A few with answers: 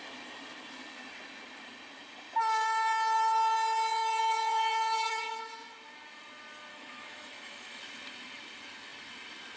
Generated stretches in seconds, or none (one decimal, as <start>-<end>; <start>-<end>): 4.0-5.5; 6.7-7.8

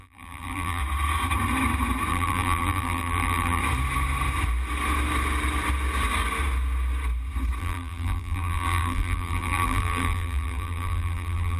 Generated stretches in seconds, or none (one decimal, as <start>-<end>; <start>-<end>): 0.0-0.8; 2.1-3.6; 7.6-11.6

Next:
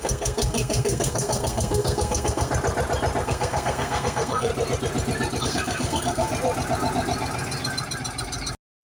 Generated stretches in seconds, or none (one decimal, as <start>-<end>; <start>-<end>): 0.0-2.5; 3.2-4.5; 5.4-6.3

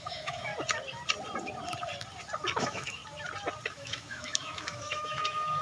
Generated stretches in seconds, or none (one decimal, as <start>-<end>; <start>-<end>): 0.0-0.5; 2.6-3.0; 3.7-5.6